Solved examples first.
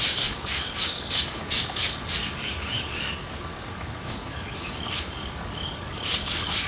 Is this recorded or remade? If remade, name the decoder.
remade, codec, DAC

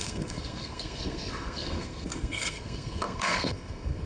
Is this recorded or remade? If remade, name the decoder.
remade, codec, SNAC